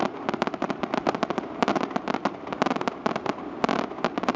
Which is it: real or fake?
real